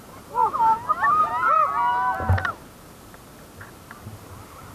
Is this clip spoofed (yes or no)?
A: no